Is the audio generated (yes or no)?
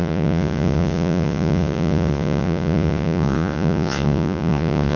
yes